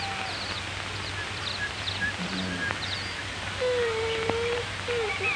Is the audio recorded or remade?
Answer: recorded